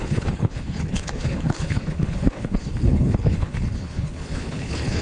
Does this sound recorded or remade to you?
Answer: remade